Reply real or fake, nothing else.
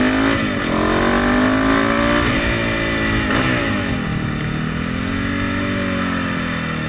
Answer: real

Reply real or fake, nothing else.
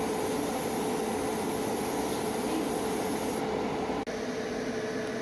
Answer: real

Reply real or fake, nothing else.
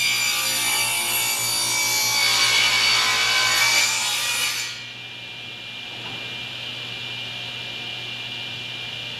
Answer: real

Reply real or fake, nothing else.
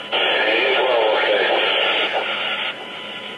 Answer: real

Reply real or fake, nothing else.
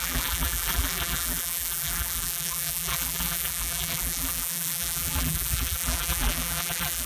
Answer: fake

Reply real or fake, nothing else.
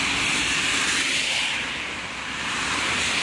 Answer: fake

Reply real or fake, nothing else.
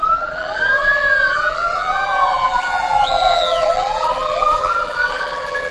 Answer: fake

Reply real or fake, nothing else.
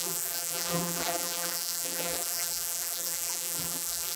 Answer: fake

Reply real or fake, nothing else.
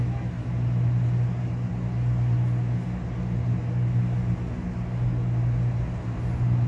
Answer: real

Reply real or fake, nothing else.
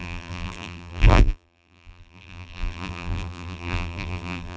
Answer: fake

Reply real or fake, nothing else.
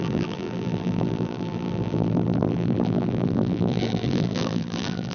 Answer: fake